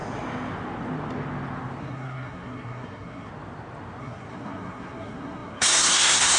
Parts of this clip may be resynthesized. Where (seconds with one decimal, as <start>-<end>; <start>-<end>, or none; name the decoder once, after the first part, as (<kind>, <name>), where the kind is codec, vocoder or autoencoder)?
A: 1.8-3.3 (codec, SNAC); 4.0-6.4